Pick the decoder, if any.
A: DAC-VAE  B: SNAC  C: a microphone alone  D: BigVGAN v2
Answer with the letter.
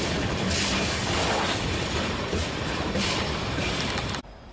D